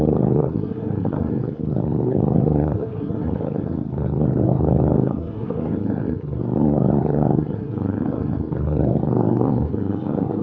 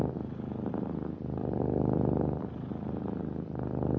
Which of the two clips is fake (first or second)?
first